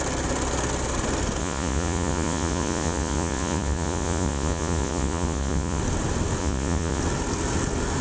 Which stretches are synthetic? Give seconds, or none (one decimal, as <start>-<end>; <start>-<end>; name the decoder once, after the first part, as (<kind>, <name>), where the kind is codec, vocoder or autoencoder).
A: 1.4-5.8 (vocoder, Vocos); 6.4-7.0